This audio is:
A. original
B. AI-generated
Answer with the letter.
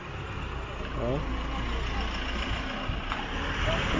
A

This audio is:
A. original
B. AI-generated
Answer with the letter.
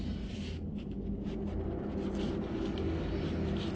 A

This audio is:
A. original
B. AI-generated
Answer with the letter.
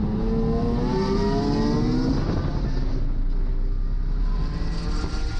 A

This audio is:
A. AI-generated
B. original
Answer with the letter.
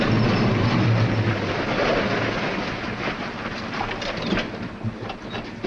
B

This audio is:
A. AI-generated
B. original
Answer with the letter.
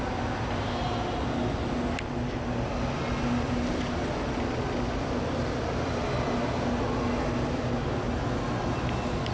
B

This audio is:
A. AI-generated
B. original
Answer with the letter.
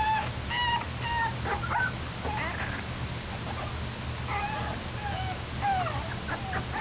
B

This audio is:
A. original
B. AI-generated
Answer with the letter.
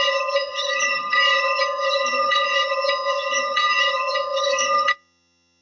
B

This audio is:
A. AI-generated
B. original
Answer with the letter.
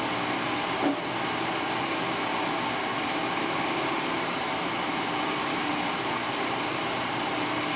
B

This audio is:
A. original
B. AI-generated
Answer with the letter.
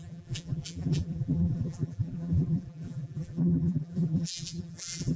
B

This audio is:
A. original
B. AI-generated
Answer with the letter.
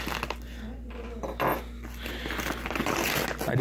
A